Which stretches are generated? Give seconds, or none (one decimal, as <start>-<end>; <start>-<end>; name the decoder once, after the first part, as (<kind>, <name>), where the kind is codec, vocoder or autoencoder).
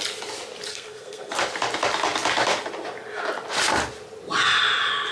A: 0.7-1.3 (codec, SNAC)